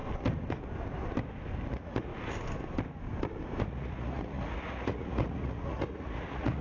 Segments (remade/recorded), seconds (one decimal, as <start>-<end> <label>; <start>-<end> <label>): 0.0-1.7 recorded; 1.7-2.1 remade; 2.1-3.6 recorded; 3.6-6.6 remade